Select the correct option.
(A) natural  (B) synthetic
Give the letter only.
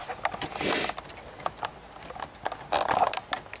A